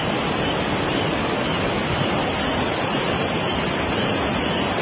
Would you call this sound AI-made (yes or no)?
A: no